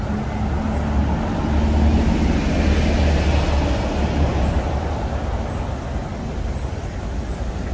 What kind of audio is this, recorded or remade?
recorded